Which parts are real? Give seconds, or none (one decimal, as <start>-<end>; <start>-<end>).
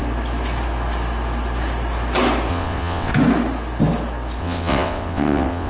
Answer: 0.0-2.5; 3.1-4.4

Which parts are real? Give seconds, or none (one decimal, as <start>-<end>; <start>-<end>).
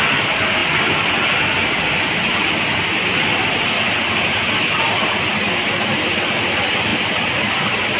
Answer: 0.0-8.0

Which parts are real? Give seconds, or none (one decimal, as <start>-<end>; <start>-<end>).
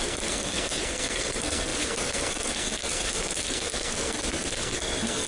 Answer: none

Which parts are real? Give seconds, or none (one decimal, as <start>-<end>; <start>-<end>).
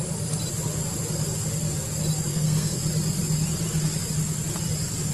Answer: 0.0-2.3; 2.8-5.1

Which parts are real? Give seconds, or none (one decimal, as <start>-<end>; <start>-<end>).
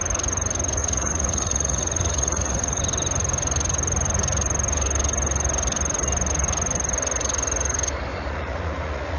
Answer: 0.0-0.8; 2.8-8.1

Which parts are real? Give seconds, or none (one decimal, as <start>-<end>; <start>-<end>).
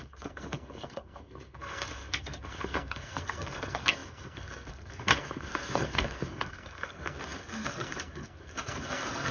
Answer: none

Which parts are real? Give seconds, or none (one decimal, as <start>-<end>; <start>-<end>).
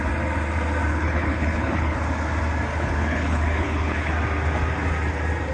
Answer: 0.0-0.9; 2.0-2.7; 4.1-5.5